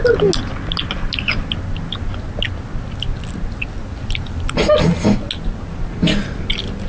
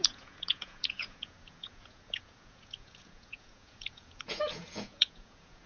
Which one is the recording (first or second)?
first